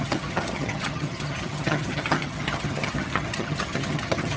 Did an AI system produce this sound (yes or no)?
yes